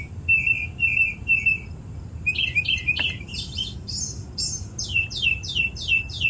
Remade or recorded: recorded